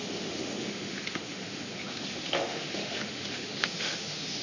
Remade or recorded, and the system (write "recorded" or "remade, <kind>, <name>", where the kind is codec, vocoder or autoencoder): remade, autoencoder, DAC-VAE